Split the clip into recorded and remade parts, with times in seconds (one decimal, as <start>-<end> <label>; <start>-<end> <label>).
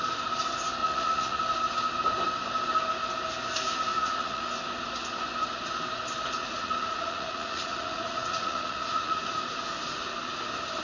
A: 0.0-0.8 recorded; 0.8-1.4 remade; 1.4-3.9 recorded; 3.9-4.4 remade; 4.4-6.4 recorded; 6.4-9.2 remade; 9.2-10.8 recorded